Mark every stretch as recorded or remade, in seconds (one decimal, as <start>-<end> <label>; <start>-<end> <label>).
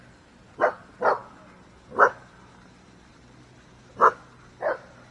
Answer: 0.0-5.1 recorded